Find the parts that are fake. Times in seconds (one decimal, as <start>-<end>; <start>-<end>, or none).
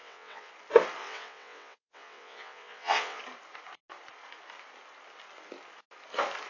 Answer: 0.0-0.5; 1.0-3.2